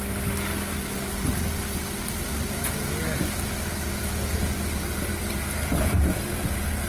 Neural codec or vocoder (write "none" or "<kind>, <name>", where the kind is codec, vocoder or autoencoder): none